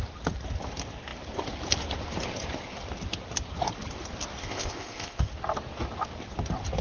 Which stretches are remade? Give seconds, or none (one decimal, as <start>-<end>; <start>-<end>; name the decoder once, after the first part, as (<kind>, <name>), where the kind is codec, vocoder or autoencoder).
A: 4.4-5.3 (codec, ZipCodec)